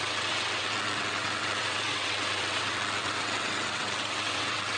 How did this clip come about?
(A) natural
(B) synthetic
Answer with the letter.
B